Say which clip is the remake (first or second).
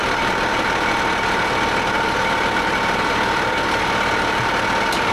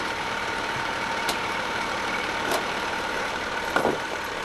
second